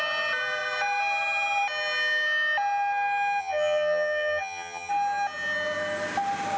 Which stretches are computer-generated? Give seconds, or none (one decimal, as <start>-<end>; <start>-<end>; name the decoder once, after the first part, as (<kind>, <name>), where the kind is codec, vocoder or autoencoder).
3.4-4.9 (vocoder, HiFi-GAN)